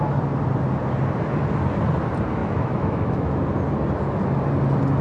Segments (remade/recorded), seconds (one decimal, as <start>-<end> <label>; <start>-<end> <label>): 0.0-2.4 recorded; 2.4-3.4 remade; 3.4-5.0 recorded